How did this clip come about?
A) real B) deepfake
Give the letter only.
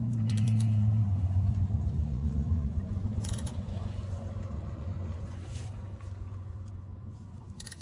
B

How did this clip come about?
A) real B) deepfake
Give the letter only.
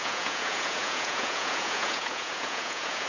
B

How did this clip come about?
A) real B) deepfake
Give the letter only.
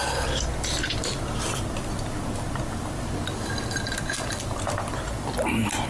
A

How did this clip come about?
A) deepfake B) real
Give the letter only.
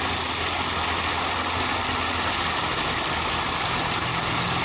B